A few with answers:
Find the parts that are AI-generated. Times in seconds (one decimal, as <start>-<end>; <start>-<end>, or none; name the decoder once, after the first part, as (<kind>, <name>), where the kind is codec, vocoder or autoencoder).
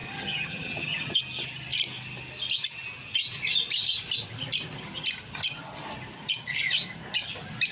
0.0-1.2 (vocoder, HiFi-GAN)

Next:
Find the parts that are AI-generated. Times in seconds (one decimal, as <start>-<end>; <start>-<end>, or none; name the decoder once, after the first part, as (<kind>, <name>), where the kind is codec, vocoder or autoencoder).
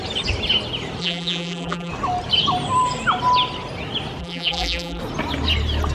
1.0-1.9 (vocoder, BigVGAN v2); 4.2-5.0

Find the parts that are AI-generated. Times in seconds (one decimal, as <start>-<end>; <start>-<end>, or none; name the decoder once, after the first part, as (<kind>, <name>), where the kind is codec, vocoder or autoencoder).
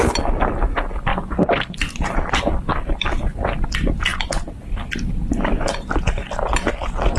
4.1-5.5 (vocoder, BigVGAN v2)